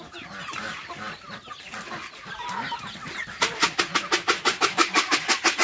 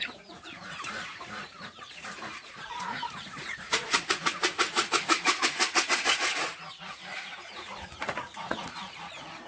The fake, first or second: second